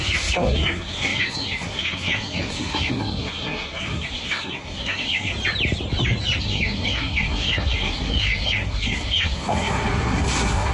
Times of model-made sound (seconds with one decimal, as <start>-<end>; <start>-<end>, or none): 0.0-5.3; 6.4-10.7